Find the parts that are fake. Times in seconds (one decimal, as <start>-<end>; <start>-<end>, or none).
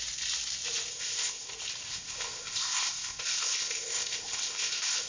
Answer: 0.9-1.5; 1.9-5.1